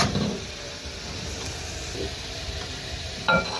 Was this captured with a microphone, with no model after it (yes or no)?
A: no